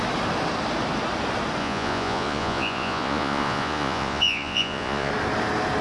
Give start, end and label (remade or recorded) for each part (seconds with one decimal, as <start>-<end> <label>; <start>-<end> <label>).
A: 0.0-1.6 recorded; 1.6-5.1 remade; 5.1-5.8 recorded